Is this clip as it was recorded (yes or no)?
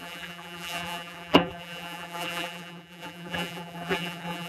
no